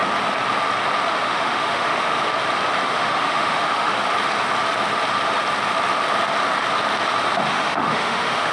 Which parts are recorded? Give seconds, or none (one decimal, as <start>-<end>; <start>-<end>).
0.0-1.1; 2.3-2.9; 3.9-7.5